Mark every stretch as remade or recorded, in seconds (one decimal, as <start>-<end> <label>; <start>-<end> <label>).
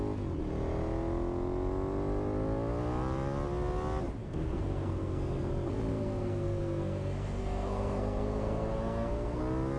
0.0-4.2 recorded; 4.2-5.5 remade; 5.5-5.9 recorded; 5.9-9.4 remade; 9.4-9.8 recorded